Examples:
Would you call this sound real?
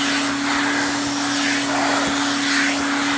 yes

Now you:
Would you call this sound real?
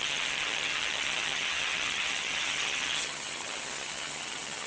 no